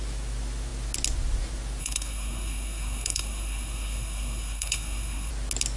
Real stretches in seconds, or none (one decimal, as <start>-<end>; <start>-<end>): 0.0-1.8; 5.3-5.8